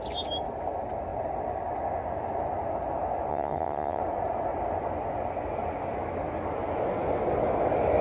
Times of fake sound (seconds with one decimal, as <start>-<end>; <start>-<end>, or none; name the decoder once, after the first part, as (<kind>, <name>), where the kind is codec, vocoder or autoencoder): 3.3-4.0 (vocoder, HiFi-GAN)